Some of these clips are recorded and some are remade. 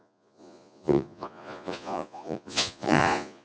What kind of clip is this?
remade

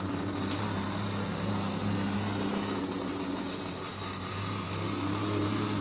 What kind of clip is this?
recorded